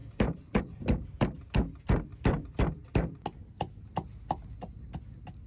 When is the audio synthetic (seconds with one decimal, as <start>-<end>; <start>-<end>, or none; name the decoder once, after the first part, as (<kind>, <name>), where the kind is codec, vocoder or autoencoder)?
2.1-2.6 (vocoder, BigVGAN v2)